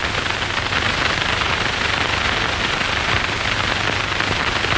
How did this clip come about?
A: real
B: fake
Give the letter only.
A